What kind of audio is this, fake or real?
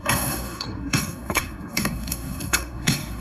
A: fake